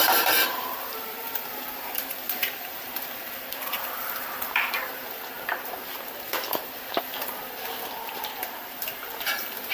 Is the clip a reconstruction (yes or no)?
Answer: yes